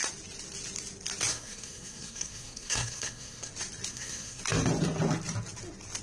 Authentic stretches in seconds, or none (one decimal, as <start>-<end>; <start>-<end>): 0.0-1.3; 3.5-3.9; 4.4-6.0

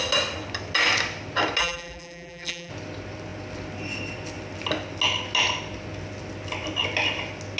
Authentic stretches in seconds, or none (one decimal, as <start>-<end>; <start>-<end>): 0.0-1.6; 2.7-7.6

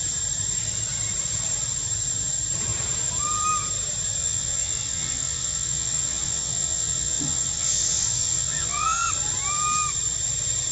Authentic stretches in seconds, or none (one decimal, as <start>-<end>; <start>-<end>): 0.0-4.2; 9.1-10.7